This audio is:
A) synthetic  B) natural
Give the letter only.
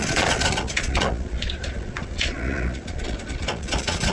A